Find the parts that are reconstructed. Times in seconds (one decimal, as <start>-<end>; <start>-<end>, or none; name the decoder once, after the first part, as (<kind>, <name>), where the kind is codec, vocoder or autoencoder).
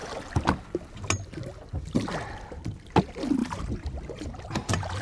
3.4-5.0 (vocoder, BigVGAN v2)